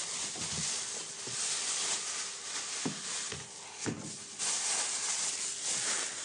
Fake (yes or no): no